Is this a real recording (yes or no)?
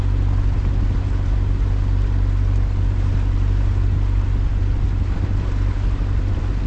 yes